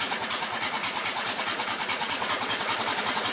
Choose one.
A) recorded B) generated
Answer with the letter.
B